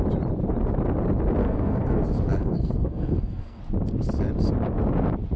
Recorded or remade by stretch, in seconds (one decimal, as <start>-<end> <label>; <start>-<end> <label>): 0.0-1.4 recorded; 1.4-2.0 remade; 2.0-2.4 recorded; 2.4-3.6 remade; 3.6-5.4 recorded